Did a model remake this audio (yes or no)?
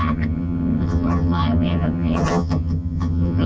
yes